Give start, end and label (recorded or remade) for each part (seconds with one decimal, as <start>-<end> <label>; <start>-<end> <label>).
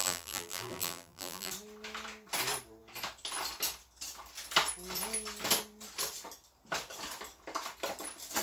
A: 0.0-1.5 remade; 1.5-8.4 recorded